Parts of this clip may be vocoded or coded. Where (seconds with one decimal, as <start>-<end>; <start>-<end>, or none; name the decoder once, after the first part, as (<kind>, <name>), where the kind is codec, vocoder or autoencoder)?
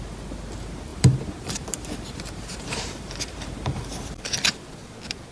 0.9-4.1 (vocoder, BigVGAN v2)